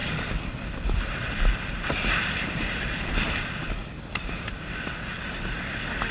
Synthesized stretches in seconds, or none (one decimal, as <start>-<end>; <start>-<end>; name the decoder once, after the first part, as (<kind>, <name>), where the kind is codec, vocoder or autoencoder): none